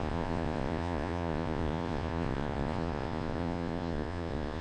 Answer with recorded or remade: remade